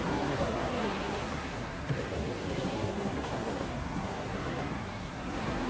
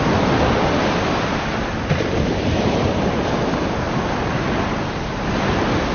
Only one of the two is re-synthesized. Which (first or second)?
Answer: first